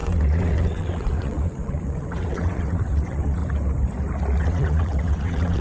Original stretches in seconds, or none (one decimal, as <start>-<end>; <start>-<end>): 3.4-4.4